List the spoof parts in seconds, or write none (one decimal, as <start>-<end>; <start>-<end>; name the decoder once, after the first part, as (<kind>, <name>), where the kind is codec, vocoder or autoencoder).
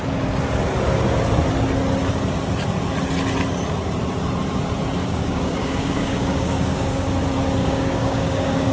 5.0-7.1 (codec, DAC); 7.6-8.7